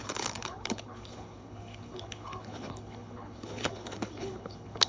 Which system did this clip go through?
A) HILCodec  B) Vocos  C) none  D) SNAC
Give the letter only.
A